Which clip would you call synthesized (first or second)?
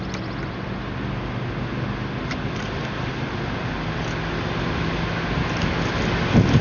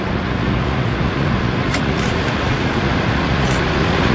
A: second